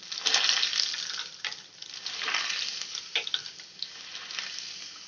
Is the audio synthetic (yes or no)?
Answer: no